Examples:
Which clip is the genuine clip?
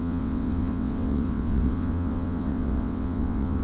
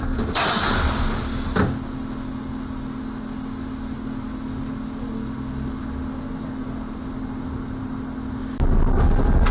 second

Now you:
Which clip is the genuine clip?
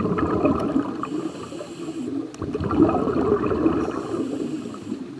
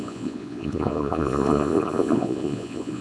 first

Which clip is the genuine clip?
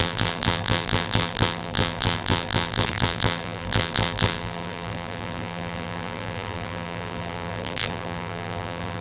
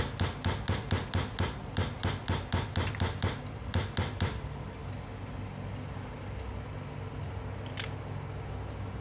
second